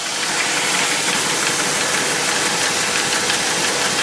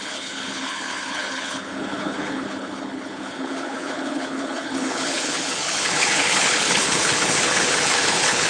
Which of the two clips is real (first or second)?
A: first